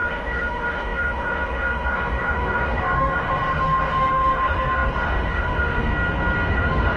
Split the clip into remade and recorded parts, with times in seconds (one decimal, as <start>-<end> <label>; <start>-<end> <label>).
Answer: 0.0-5.9 remade; 5.9-6.5 recorded; 6.5-7.0 remade